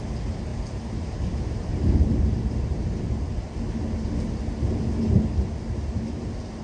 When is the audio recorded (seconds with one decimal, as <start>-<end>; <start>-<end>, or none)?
0.0-0.5; 3.2-6.6